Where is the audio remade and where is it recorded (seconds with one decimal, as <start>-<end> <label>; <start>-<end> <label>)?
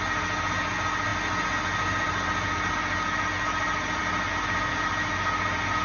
0.0-5.8 recorded